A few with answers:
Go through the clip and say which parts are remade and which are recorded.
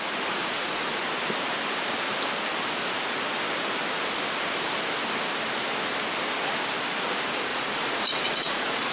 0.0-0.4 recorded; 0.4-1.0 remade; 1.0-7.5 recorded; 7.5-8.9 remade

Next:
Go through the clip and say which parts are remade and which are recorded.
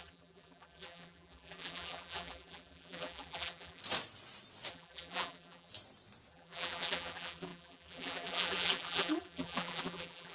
0.0-3.8 remade; 3.8-4.7 recorded; 4.7-5.7 remade; 5.7-6.3 recorded; 6.3-10.3 remade